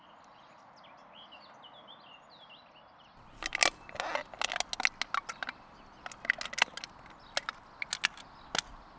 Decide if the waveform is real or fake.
real